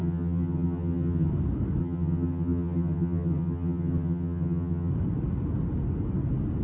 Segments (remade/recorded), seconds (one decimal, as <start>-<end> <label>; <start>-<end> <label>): 0.0-1.3 remade; 1.3-1.8 recorded; 1.8-4.9 remade; 4.9-6.6 recorded